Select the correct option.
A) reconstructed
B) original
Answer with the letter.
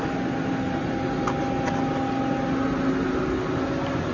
B